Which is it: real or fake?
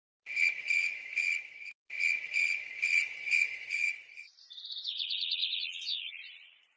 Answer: fake